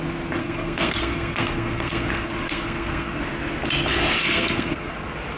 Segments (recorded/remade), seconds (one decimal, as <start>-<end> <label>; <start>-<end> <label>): 0.0-0.4 recorded; 0.4-3.2 remade; 3.2-4.2 recorded; 4.2-4.9 remade; 4.9-5.4 recorded